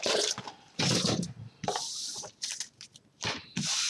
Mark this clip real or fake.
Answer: fake